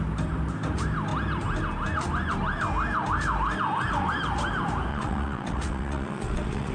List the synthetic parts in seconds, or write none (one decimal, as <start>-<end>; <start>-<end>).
4.9-6.7